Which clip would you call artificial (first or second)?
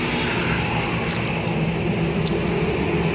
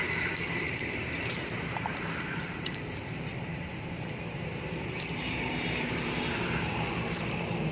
second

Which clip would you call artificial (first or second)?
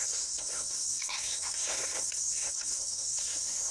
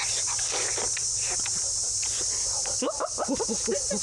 first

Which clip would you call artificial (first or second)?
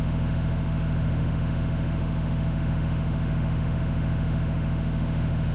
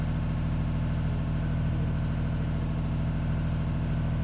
first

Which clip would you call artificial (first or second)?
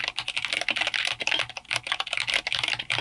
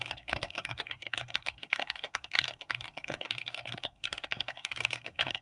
second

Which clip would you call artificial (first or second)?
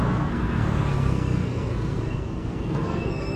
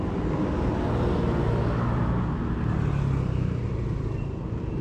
first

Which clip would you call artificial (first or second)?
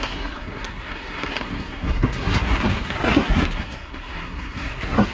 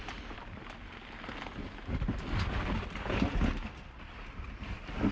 first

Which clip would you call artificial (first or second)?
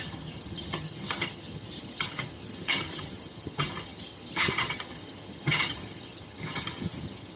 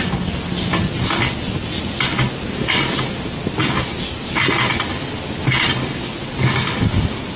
first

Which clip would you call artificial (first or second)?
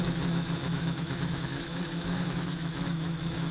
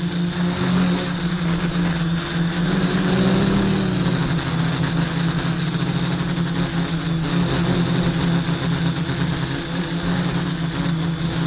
first